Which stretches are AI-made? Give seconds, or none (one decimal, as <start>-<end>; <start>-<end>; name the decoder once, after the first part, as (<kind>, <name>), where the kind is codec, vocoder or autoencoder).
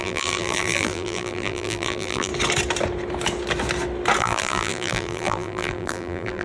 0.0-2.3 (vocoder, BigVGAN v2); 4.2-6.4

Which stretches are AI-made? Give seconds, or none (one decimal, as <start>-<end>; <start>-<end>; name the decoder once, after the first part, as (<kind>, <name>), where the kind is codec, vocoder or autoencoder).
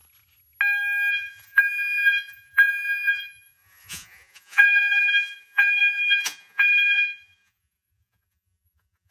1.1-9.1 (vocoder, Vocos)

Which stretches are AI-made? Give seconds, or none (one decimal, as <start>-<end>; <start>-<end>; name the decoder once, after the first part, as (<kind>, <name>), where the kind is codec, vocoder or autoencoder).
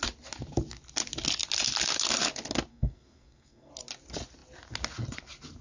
2.7-3.7 (codec, SNAC)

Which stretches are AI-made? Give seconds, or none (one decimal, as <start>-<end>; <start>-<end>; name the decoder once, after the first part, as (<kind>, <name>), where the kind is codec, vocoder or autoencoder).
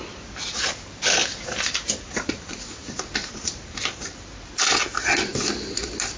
1.2-4.5 (vocoder, BigVGAN v2)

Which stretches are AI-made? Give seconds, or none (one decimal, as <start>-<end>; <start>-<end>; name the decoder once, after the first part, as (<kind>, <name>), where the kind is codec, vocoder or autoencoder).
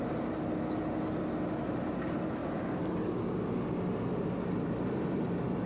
none